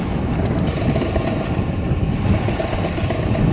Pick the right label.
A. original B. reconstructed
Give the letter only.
A